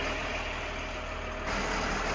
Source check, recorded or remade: recorded